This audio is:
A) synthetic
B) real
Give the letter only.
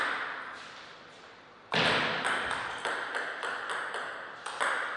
B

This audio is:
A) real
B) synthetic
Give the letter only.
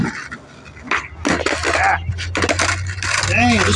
A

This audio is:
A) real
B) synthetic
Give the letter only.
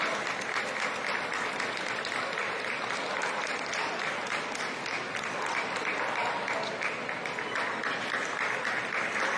A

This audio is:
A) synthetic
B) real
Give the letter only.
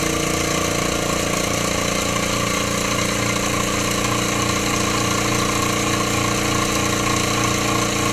B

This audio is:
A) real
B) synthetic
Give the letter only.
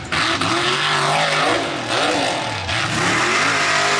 A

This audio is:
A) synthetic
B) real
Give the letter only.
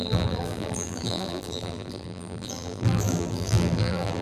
A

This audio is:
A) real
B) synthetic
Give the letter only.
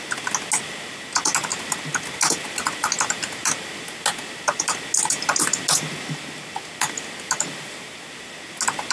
A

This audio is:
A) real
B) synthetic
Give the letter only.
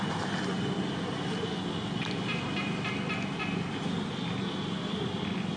A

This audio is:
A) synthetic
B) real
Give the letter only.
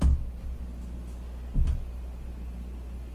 B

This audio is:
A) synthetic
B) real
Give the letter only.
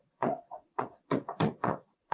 A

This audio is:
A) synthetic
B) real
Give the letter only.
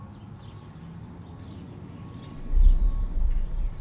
B